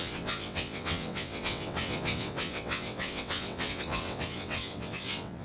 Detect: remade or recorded remade